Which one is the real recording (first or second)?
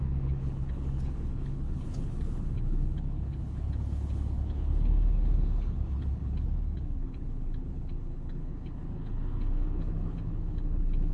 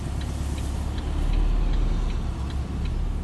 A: second